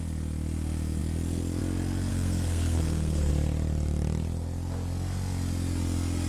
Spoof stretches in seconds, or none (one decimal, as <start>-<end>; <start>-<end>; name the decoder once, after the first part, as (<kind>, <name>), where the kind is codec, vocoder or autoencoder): 2.1-3.3 (codec, SNAC)